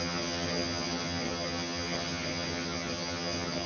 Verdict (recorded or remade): remade